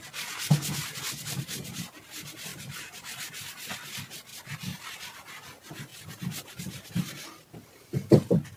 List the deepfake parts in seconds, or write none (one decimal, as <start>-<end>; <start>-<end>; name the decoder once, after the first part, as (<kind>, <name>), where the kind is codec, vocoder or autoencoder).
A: 2.5-3.5 (vocoder, BigVGAN v2)